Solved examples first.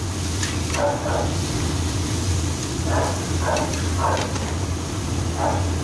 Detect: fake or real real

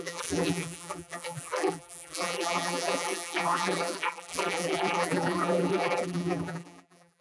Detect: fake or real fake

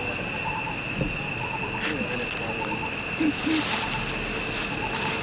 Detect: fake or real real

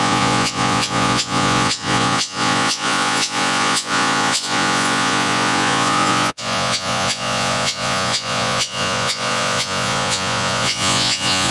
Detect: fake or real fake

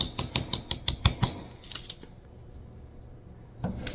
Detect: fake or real real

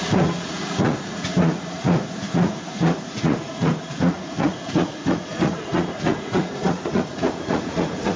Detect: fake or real fake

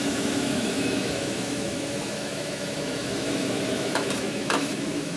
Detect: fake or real fake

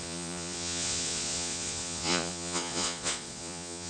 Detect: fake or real fake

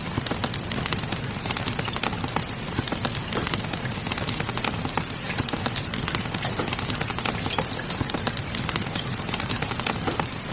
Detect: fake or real real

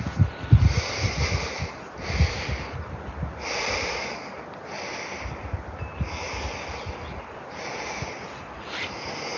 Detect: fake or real real